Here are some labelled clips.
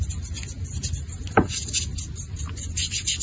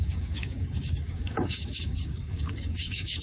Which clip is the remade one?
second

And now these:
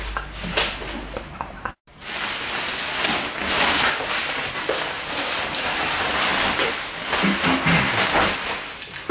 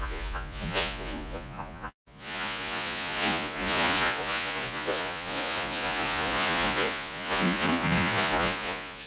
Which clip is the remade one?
second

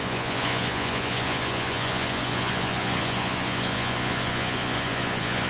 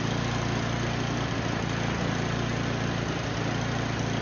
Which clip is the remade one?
first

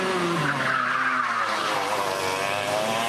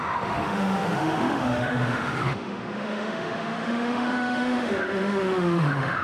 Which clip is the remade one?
second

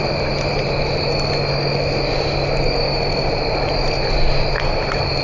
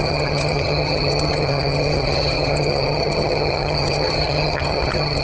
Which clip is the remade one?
second